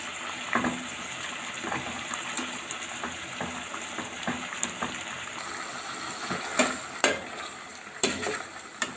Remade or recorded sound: remade